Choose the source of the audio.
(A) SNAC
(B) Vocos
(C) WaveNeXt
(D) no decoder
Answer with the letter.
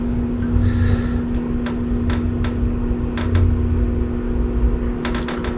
D